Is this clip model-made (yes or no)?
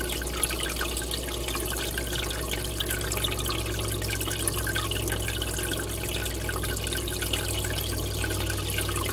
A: no